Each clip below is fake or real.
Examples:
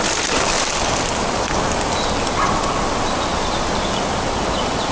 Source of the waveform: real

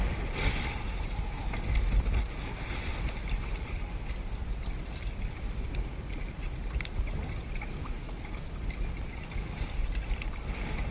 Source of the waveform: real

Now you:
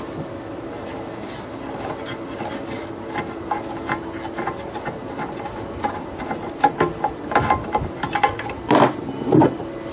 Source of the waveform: real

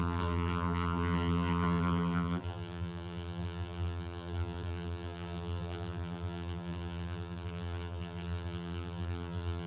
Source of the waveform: fake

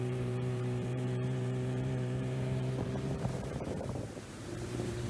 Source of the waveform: fake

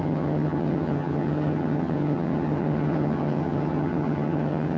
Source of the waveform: fake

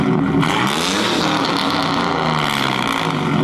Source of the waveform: real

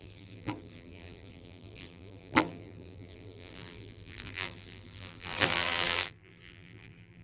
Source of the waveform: fake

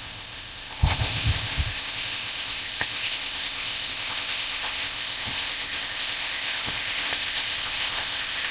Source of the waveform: fake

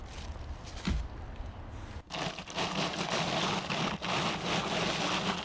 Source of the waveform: real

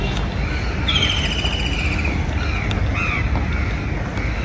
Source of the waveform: real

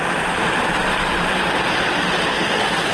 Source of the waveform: real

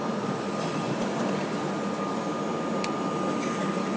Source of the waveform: real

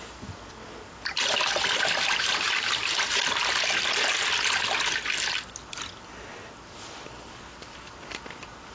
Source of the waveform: real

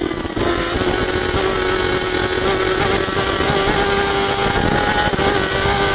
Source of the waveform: real